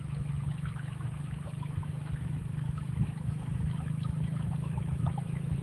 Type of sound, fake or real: fake